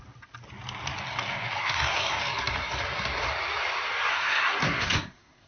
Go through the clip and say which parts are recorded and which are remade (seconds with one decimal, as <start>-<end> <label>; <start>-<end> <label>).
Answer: 0.0-1.6 recorded; 1.6-2.2 remade; 2.2-4.1 recorded; 4.1-5.5 remade

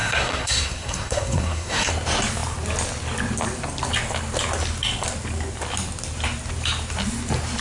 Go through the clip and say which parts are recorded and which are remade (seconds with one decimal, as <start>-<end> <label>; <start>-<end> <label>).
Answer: 0.0-1.9 remade; 1.9-7.6 recorded

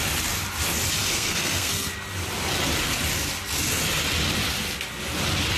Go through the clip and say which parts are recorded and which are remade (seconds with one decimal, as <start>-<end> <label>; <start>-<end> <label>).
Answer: 0.0-1.1 recorded; 1.1-1.9 remade; 1.9-5.6 recorded

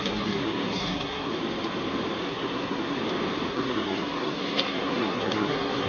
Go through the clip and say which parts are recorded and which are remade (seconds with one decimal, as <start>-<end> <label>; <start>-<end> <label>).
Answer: 0.0-1.3 remade; 1.3-2.2 recorded; 2.2-3.0 remade; 3.0-3.5 recorded; 3.5-5.9 remade

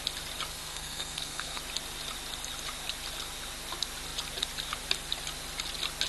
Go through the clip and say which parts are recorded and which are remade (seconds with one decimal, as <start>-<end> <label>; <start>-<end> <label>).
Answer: 0.0-0.5 recorded; 0.5-1.6 remade; 1.6-6.1 recorded

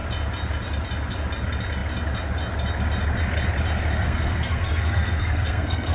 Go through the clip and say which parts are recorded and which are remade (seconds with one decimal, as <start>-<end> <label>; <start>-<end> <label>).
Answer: 0.0-3.9 recorded; 3.9-5.9 remade